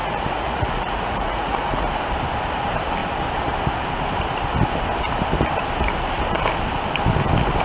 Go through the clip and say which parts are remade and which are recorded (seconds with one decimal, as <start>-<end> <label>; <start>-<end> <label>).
0.0-1.9 remade; 1.9-7.6 recorded